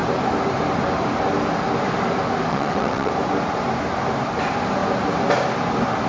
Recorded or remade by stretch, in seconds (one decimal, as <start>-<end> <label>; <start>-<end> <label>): 0.0-2.5 recorded; 2.5-3.1 remade; 3.1-6.1 recorded